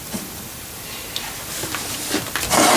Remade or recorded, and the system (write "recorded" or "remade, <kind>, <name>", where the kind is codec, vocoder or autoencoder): recorded